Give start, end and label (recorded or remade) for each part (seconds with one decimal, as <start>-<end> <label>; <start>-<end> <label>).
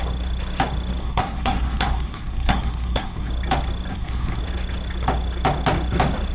0.0-1.0 recorded; 1.0-3.3 remade; 3.3-3.9 recorded; 3.9-4.4 remade; 4.4-6.3 recorded